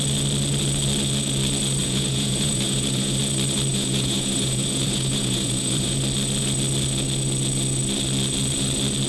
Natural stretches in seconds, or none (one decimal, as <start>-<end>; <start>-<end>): 0.0-1.8; 3.2-3.7; 6.0-9.1